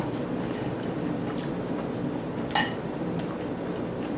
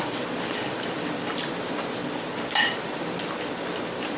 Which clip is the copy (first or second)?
second